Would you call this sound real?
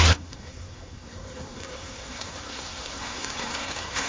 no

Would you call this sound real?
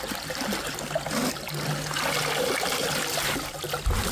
yes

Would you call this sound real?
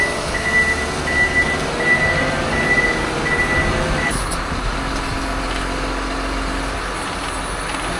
yes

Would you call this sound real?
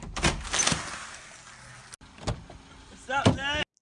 yes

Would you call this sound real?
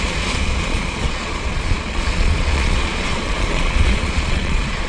no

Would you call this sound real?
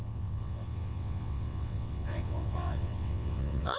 no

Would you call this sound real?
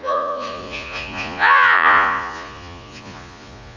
no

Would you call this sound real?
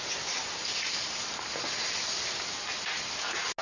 yes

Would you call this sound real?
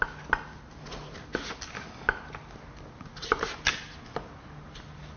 yes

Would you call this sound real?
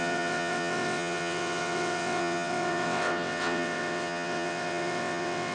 no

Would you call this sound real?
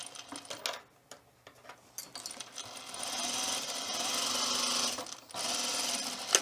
yes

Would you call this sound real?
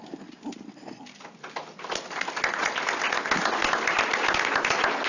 yes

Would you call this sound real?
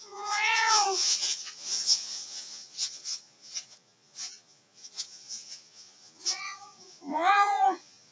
no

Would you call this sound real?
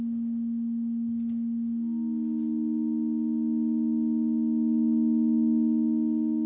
yes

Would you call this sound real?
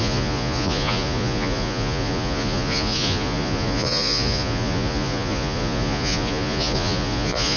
no